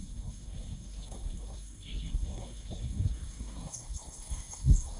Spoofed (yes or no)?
yes